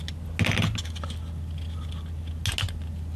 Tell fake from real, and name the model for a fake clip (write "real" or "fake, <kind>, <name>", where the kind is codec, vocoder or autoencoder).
real